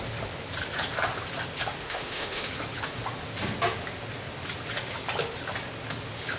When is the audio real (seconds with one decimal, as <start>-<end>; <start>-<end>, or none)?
0.0-1.8; 2.5-6.4